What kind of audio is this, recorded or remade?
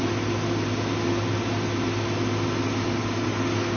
recorded